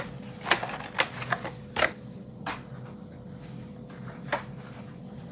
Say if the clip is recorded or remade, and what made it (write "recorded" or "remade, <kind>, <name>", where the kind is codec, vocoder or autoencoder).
recorded